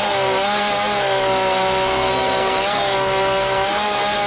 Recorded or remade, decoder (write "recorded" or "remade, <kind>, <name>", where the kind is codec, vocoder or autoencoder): remade, codec, SNAC